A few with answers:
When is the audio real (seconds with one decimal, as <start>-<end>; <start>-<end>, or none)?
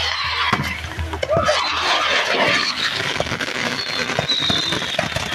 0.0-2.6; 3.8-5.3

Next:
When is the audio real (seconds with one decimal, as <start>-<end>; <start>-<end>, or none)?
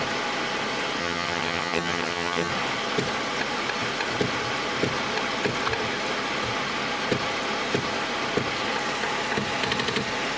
0.0-1.0; 2.5-10.4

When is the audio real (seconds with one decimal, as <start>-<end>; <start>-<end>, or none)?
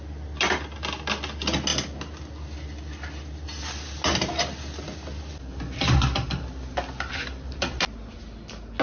0.0-5.5; 7.8-8.8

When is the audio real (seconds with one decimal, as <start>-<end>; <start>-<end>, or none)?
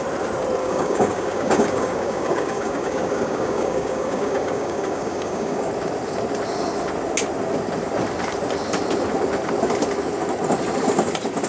0.0-0.6; 5.7-11.5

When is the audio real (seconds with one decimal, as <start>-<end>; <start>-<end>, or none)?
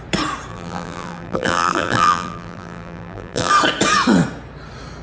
0.0-0.5; 3.5-5.0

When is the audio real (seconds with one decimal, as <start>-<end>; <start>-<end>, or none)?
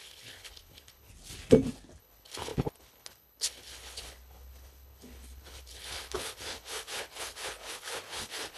1.1-2.0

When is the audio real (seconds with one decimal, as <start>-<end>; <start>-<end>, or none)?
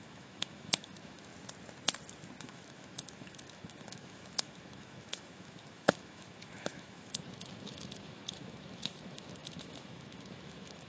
1.3-2.4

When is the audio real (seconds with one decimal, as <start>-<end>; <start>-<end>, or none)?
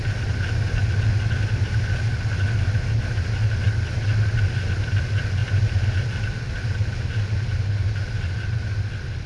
0.0-9.3